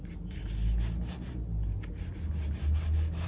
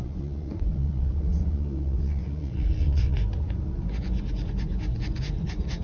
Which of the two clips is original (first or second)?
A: first